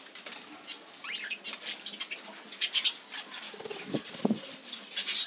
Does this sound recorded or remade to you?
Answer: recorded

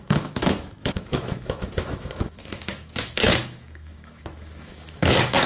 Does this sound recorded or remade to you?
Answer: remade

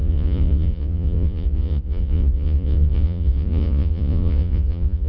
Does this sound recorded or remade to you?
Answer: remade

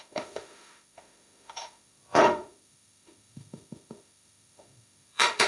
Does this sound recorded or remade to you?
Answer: remade